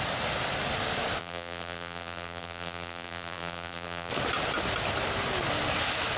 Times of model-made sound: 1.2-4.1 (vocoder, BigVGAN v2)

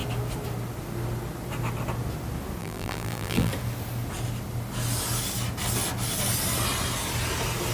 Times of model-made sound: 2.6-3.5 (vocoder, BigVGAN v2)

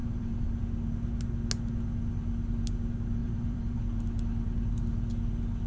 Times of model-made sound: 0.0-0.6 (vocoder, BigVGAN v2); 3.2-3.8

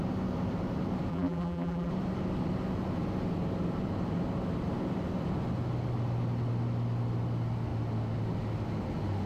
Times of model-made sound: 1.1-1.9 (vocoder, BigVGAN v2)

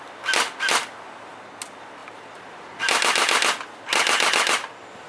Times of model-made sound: none

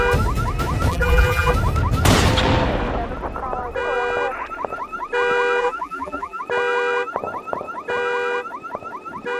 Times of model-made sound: 0.9-1.5 (vocoder, BigVGAN v2); 5.6-6.4

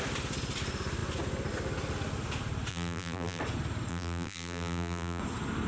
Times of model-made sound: 2.7-3.4 (vocoder, BigVGAN v2); 3.9-5.2